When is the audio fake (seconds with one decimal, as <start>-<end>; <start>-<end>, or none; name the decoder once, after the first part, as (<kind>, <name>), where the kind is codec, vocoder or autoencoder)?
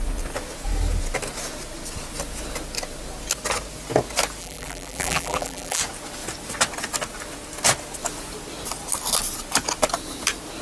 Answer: 4.4-5.8 (vocoder, BigVGAN v2)